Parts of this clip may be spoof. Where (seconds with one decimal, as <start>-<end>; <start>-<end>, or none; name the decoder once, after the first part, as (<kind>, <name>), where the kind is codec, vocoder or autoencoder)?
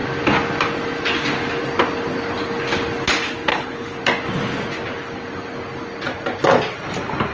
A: 3.5-4.0 (codec, HILCodec)